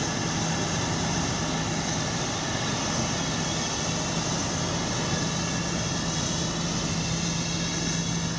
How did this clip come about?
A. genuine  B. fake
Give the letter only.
A